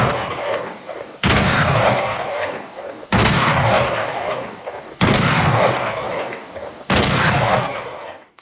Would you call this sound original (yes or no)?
no